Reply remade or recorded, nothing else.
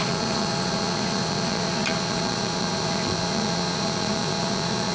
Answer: remade